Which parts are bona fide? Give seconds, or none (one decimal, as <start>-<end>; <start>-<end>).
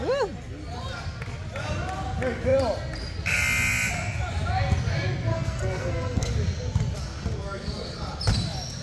0.0-5.3; 6.3-8.8